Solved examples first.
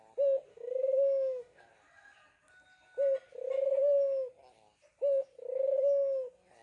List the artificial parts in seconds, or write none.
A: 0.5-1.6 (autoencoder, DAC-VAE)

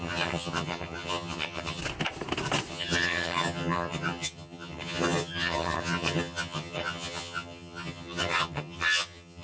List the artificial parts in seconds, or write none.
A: 0.0-1.8 (vocoder, HiFi-GAN); 2.7-9.4

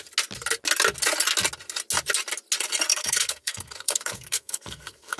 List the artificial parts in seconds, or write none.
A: 2.9-5.2 (codec, SNAC)

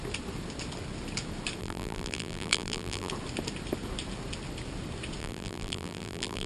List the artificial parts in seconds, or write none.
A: 1.6-3.1 (vocoder, BigVGAN v2); 5.2-6.5

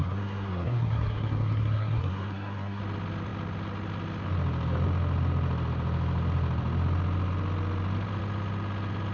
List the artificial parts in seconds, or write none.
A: 0.0-2.8 (codec, SNAC)

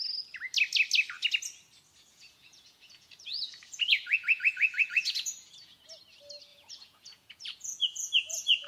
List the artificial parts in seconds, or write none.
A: 2.1-5.8 (vocoder, Vocos); 6.5-8.7

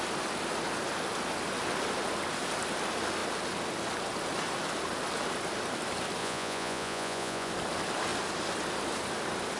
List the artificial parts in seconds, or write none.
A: 6.2-7.5 (vocoder, Vocos)